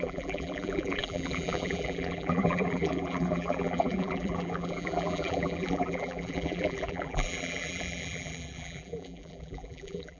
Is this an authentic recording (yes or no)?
no